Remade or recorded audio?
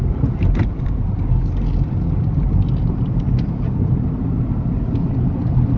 recorded